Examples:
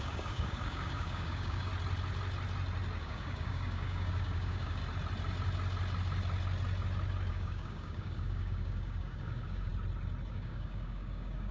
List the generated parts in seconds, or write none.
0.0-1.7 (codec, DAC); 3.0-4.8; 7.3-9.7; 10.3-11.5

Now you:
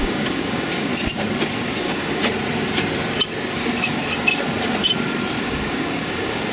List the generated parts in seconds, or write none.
0.0-0.9 (codec, DAC); 1.8-2.2; 5.4-6.5